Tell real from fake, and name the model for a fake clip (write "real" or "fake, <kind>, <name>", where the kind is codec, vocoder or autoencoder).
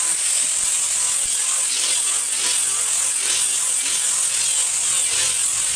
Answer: real